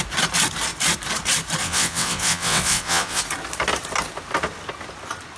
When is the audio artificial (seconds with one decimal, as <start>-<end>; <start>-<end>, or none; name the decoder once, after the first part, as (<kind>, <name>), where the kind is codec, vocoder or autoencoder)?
1.6-3.2 (vocoder, WaveNeXt)